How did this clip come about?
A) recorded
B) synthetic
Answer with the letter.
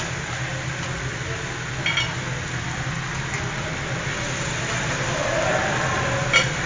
A